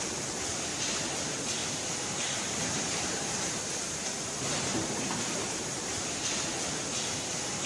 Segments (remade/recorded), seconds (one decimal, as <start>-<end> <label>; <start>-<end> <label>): 0.0-0.7 recorded; 0.7-1.2 remade; 1.2-1.6 recorded; 1.6-6.0 remade; 6.0-7.7 recorded